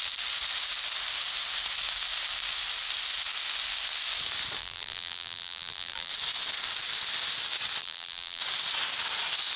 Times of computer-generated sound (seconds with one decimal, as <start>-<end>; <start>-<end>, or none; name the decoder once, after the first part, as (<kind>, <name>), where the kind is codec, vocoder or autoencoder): 4.6-6.1 (vocoder, BigVGAN v2); 7.8-8.4